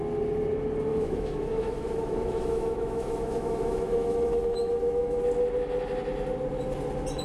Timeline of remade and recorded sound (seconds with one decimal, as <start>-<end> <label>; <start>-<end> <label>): 0.0-0.9 recorded; 0.9-5.2 remade; 5.2-7.2 recorded

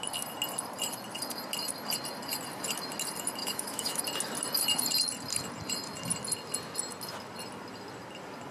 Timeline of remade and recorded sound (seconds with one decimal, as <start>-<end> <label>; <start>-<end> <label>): 0.0-3.4 recorded; 3.4-4.0 remade; 4.0-8.5 recorded